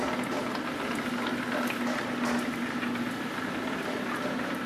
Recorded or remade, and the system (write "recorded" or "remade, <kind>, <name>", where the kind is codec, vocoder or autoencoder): recorded